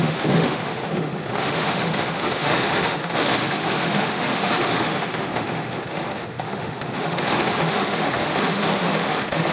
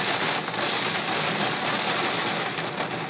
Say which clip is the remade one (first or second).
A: first